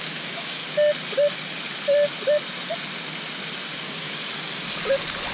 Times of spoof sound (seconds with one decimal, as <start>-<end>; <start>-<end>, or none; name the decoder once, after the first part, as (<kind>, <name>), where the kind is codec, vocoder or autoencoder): 0.0-0.6 (codec, DAC); 3.8-4.2

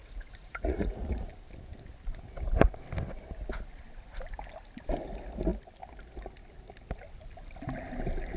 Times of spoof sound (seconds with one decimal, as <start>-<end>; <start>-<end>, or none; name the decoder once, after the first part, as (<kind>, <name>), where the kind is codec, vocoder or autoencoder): 0.0-1.3 (vocoder, Vocos)

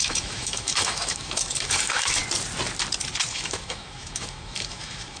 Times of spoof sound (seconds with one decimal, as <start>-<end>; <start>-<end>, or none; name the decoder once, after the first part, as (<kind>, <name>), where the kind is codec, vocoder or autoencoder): 0.0-2.2 (autoencoder, DAC-VAE); 3.3-5.2

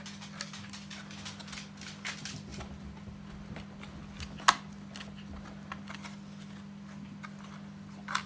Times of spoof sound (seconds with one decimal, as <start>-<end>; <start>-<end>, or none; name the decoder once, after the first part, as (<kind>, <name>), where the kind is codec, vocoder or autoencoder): none

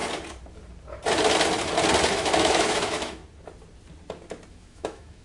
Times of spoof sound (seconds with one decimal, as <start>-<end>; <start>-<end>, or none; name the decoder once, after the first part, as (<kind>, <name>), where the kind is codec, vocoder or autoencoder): 2.1-3.2 (autoencoder, DAC-VAE); 4.5-5.2

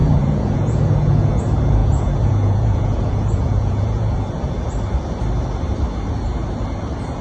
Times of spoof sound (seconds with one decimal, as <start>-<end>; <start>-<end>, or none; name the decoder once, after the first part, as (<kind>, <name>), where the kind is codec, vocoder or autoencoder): 0.0-1.4 (vocoder, Vocos); 1.8-4.3

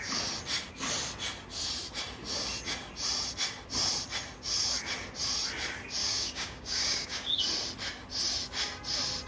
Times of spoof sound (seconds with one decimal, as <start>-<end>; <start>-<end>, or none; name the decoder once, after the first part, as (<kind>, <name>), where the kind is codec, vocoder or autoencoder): 6.0-7.4 (codec, DAC)

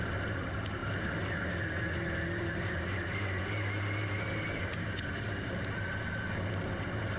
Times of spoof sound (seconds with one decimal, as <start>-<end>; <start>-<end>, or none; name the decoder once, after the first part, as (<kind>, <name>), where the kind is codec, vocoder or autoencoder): none